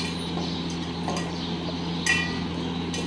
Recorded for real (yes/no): yes